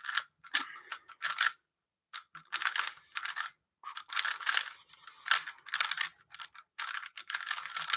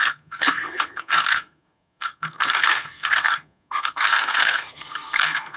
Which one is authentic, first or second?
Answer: first